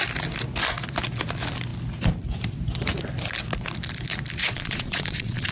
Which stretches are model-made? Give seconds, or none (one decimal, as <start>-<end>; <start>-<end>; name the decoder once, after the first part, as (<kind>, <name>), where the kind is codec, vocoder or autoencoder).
4.4-5.5 (vocoder, Vocos)

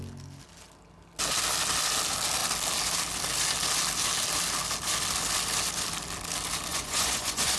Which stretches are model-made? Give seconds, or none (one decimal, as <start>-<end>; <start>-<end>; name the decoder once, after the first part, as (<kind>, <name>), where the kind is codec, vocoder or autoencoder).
6.7-7.6 (vocoder, Vocos)

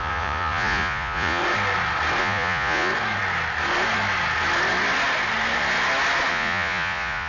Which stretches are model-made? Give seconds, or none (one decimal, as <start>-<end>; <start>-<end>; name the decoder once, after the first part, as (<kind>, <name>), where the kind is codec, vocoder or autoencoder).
0.0-1.4 (vocoder, Vocos); 2.2-2.9; 6.3-7.3

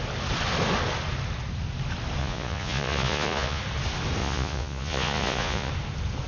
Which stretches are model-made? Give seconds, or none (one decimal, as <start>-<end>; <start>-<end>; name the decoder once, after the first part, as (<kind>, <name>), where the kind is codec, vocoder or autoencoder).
2.2-3.6 (vocoder, Vocos); 4.2-5.7

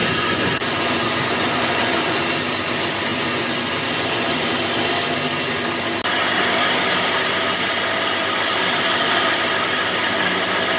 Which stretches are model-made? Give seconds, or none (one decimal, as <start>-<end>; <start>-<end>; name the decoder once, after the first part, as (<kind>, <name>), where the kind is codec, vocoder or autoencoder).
0.0-2.2 (vocoder, Vocos); 3.1-4.5